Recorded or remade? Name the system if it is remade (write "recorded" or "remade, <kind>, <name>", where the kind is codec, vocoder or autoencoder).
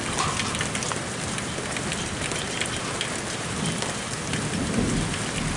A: recorded